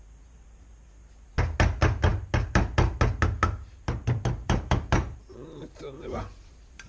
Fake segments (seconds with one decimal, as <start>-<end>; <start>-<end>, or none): 4.4-6.9